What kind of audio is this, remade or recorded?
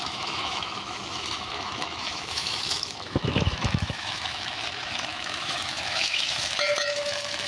remade